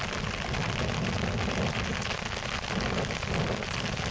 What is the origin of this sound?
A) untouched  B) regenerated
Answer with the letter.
A